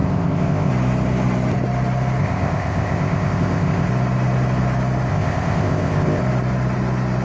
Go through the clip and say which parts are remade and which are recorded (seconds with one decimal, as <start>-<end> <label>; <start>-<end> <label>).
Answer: 0.0-0.7 remade; 0.7-2.2 recorded; 2.2-3.9 remade; 3.9-5.1 recorded; 5.1-6.2 remade; 6.2-7.2 recorded